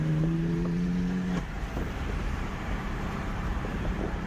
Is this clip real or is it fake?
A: fake